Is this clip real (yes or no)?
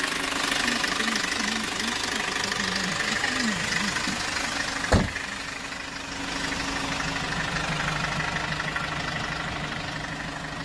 yes